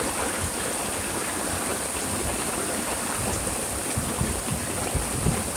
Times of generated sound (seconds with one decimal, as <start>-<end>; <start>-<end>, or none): none